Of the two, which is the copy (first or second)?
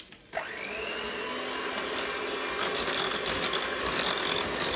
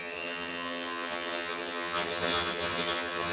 second